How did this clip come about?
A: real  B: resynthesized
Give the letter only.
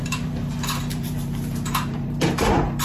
B